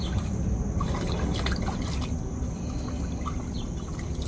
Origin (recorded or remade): recorded